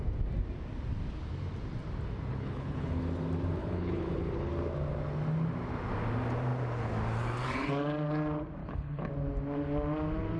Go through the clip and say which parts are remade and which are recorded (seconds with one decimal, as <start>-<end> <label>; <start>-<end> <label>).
0.0-2.3 recorded; 2.3-3.0 remade; 3.0-3.6 recorded; 3.6-4.5 remade; 4.5-8.6 recorded; 8.6-9.1 remade; 9.1-10.4 recorded